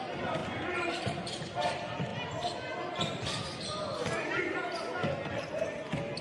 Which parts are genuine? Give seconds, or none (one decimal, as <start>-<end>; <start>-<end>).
0.0-6.2